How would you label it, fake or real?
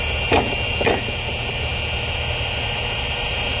real